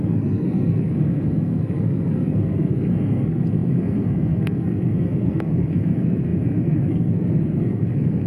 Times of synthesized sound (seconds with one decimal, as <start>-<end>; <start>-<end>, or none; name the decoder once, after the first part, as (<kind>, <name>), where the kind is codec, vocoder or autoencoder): 0.0-8.3 (codec, SNAC)